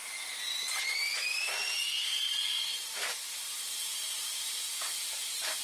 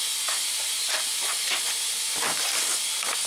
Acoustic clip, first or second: second